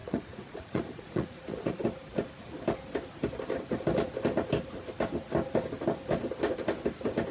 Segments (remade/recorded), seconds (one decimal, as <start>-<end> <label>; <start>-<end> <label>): 0.0-1.8 remade; 1.8-7.3 recorded